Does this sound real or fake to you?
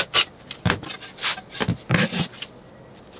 real